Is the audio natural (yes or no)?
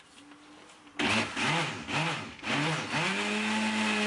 yes